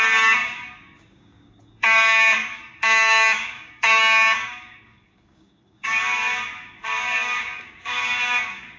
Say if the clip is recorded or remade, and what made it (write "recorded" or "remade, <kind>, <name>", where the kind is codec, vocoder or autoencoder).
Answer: remade, codec, DAC